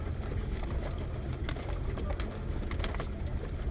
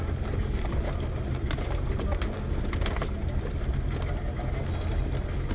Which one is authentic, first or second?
second